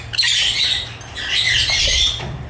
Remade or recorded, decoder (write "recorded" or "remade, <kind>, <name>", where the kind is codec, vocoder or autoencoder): recorded